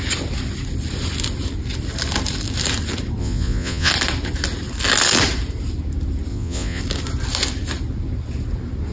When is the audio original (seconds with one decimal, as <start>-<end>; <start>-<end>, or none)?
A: 0.0-3.2; 3.9-6.3; 6.8-8.9